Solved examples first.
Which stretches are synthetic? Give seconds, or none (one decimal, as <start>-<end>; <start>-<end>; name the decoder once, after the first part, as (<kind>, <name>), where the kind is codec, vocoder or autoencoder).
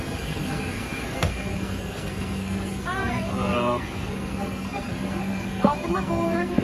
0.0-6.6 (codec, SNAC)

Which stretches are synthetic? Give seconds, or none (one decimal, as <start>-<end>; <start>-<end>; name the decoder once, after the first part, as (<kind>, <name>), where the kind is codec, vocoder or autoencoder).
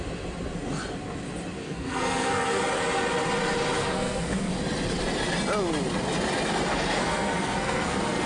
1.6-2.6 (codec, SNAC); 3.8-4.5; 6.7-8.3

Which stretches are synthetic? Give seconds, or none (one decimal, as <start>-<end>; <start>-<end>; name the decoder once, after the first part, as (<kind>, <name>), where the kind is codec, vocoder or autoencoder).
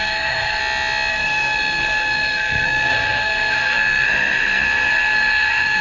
0.0-0.6 (codec, SNAC); 1.1-5.8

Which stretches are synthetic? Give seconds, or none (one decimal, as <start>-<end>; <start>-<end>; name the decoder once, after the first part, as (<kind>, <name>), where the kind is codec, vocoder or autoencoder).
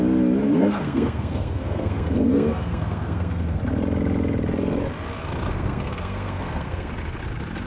0.4-3.6 (codec, SNAC); 5.5-6.9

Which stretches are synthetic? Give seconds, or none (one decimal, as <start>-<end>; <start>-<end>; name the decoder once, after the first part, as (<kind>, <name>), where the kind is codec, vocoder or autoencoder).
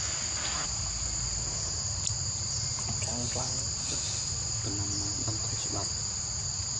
none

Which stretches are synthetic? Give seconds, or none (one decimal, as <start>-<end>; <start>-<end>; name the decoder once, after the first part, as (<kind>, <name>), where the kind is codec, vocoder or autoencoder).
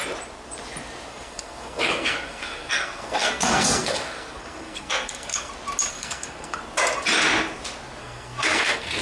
1.1-5.5 (codec, SNAC); 5.9-6.6; 8.0-9.0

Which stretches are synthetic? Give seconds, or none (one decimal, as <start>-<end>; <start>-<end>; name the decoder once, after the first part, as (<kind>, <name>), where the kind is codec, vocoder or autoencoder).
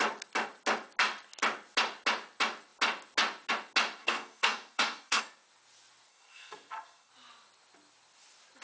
4.0-5.2 (codec, SNAC); 6.1-7.1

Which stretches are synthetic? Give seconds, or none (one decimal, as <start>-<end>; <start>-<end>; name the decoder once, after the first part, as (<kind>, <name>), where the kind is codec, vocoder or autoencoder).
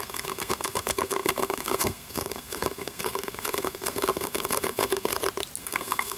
0.0-5.1 (codec, SNAC); 5.6-6.2